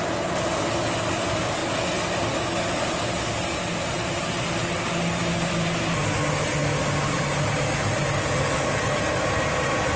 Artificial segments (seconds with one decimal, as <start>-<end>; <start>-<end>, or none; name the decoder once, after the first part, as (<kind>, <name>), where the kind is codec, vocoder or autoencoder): none